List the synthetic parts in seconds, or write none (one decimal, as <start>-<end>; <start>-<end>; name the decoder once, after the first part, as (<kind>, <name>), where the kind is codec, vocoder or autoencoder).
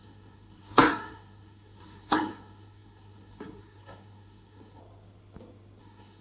0.0-4.8 (codec, SNAC); 5.8-6.2